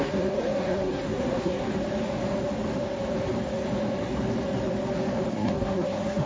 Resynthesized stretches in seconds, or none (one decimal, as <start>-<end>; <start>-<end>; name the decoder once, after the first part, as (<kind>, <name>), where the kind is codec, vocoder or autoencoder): 0.0-1.7 (codec, SNAC); 5.3-6.3

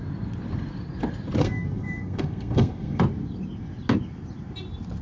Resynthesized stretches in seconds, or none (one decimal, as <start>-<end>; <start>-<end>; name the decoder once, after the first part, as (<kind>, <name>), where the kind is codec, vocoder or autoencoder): 1.4-3.0 (codec, SNAC)